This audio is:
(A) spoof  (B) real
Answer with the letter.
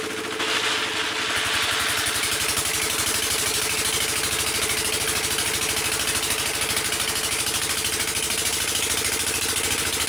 B